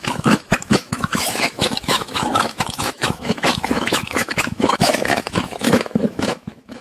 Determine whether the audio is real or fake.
fake